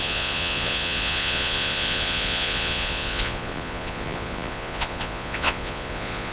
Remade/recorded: remade